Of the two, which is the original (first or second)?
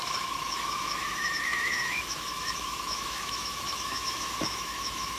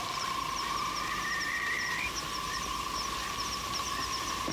second